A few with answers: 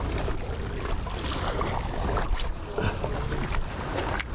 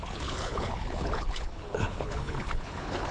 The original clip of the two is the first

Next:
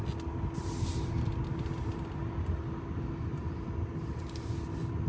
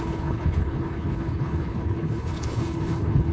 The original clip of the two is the first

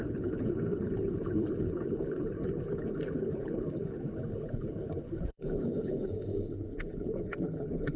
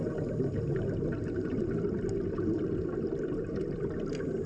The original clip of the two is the second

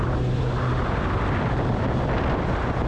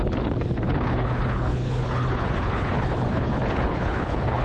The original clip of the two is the first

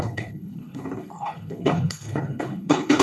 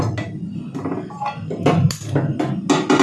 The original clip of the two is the second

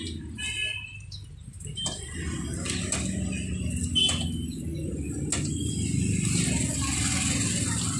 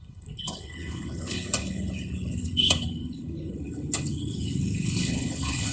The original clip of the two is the first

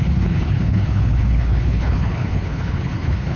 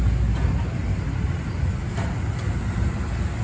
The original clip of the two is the second